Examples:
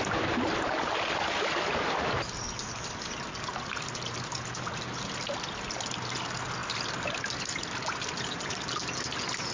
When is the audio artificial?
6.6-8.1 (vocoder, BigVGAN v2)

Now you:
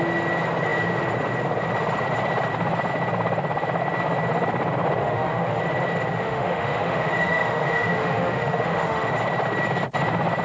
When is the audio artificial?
5.0-5.6 (autoencoder, DAC-VAE); 6.1-9.1

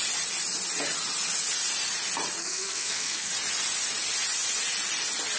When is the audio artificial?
2.4-3.3 (codec, SNAC)

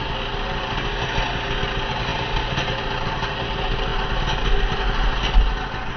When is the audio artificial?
none

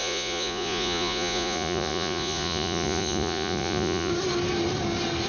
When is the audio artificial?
0.0-4.1 (vocoder, Vocos)

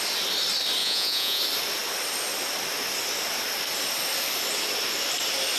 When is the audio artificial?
0.8-1.4 (vocoder, Vocos)